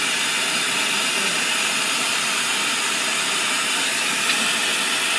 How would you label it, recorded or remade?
recorded